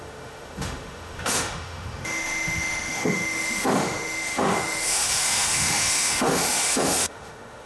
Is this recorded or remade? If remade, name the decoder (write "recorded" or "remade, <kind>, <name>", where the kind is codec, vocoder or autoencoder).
remade, autoencoder, DAC-VAE